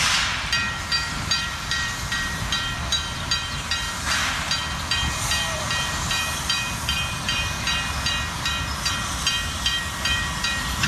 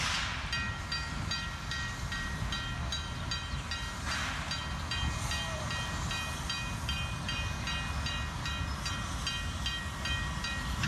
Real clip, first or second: second